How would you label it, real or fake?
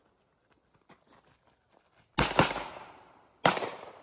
real